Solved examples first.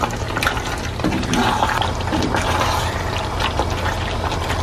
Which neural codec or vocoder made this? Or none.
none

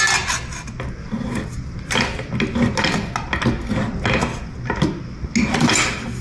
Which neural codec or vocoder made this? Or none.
none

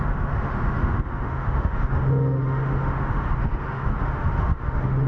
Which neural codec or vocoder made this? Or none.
autoencoder, DAC-VAE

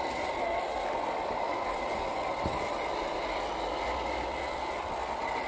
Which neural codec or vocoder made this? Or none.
none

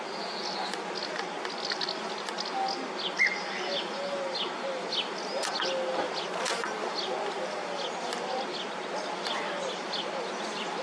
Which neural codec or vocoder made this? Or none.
none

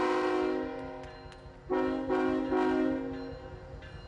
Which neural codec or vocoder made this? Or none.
none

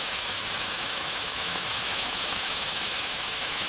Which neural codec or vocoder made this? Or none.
autoencoder, DAC-VAE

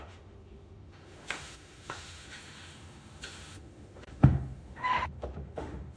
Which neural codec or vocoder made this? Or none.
autoencoder, DAC-VAE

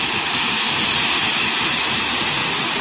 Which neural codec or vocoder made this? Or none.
none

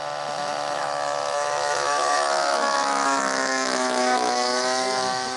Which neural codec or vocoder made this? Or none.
autoencoder, DAC-VAE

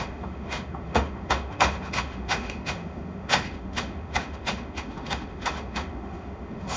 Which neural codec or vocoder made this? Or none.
autoencoder, DAC-VAE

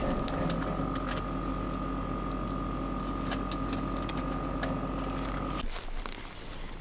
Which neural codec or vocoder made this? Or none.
none